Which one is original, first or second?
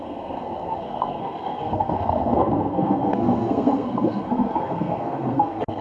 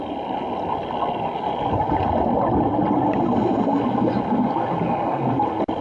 second